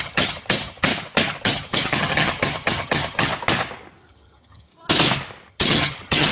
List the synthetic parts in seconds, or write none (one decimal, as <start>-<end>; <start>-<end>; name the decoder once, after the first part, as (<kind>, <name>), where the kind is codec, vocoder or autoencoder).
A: 0.0-0.9 (vocoder, HiFi-GAN); 1.4-3.3; 4.1-4.7; 5.5-6.3